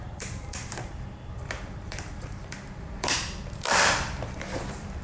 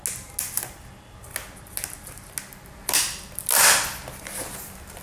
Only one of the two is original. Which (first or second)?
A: second